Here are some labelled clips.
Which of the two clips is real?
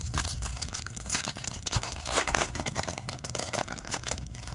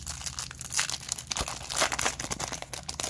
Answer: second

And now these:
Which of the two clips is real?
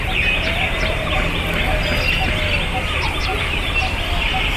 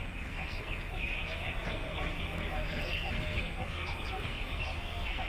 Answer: first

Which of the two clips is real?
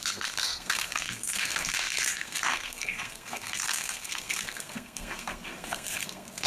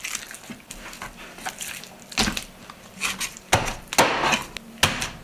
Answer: second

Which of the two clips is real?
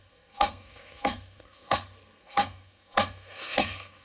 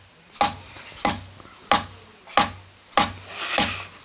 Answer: second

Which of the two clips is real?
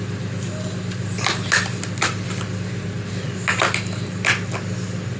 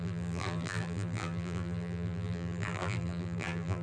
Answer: first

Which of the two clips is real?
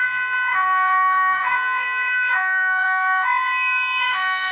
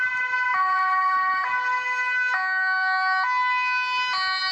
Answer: second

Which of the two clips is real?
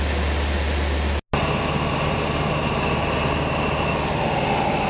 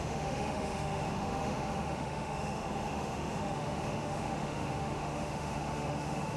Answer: first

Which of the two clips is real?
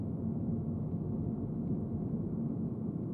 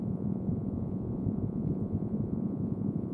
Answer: first